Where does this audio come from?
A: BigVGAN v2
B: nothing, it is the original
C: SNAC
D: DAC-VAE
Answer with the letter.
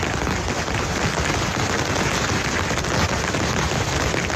B